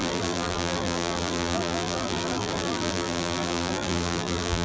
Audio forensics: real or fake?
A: fake